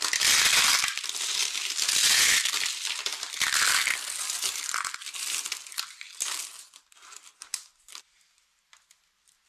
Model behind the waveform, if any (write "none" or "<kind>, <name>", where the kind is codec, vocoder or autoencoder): none